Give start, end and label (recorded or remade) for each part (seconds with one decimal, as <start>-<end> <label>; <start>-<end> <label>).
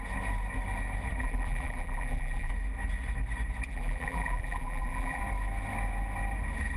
0.0-1.2 recorded; 1.2-2.5 remade; 2.5-3.7 recorded; 3.7-5.2 remade; 5.2-6.8 recorded